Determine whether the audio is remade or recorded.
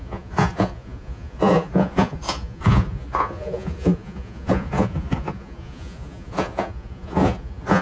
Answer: remade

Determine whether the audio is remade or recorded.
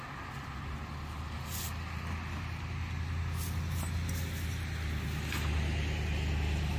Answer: recorded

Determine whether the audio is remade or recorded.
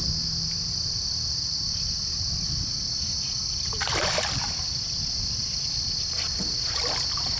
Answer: recorded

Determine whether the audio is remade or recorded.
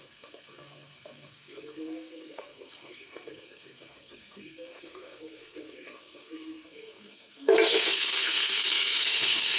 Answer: remade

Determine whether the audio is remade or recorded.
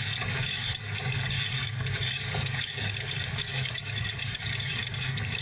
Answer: remade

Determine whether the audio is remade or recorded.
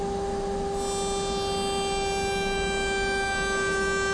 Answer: recorded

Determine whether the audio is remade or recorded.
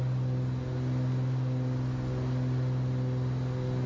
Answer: recorded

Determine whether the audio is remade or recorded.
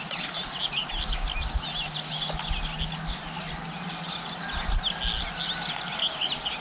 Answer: recorded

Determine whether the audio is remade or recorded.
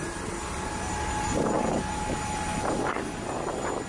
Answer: recorded